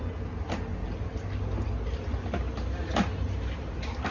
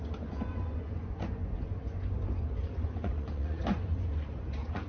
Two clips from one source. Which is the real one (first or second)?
first